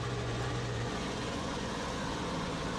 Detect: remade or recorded remade